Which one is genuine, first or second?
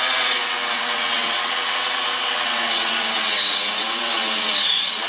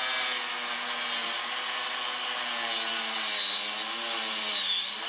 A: second